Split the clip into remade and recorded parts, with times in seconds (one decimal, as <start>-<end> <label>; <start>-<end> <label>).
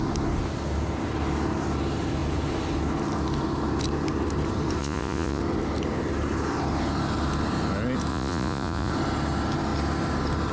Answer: 0.0-4.8 recorded; 4.8-5.4 remade; 5.4-8.1 recorded; 8.1-8.9 remade; 8.9-10.5 recorded